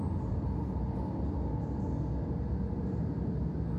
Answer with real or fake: real